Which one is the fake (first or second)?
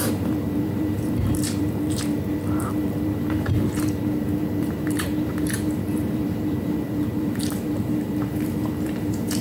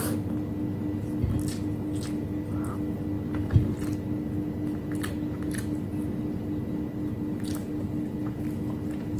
first